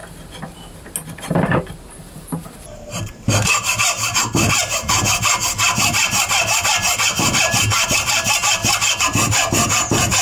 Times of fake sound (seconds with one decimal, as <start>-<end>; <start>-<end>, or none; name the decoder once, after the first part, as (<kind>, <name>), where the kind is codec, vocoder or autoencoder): 1.2-4.6 (vocoder, BigVGAN v2); 7.1-8.6